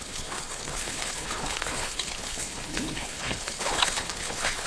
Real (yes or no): no